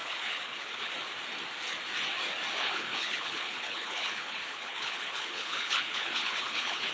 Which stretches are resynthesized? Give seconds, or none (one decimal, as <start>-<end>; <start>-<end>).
0.0-0.9; 2.6-6.9